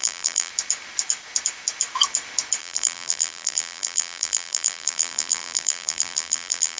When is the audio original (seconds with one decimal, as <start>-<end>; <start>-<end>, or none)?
0.5-2.6